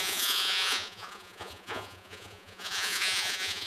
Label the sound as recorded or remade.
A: remade